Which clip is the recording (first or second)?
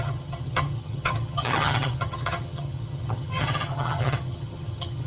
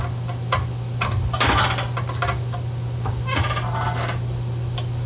second